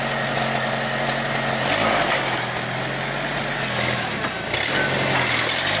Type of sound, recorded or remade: recorded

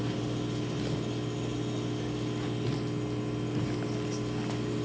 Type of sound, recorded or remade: recorded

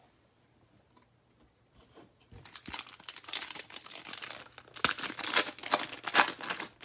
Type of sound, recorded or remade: recorded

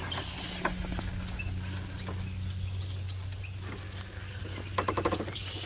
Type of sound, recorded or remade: recorded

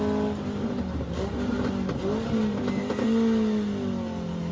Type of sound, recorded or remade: recorded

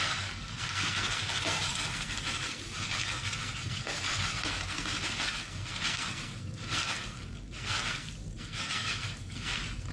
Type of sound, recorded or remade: remade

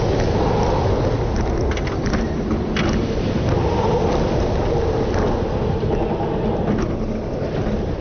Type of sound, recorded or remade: recorded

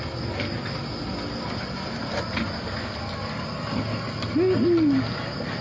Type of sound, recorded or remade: recorded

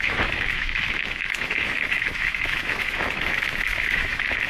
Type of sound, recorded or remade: remade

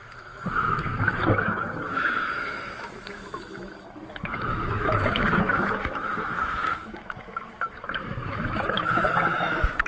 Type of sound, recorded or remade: remade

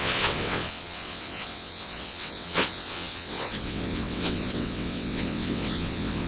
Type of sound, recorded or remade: remade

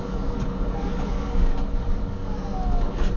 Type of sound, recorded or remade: remade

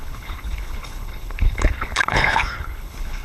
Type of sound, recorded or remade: remade